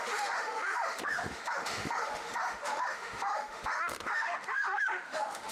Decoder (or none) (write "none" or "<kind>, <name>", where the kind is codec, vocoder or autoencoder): autoencoder, DAC-VAE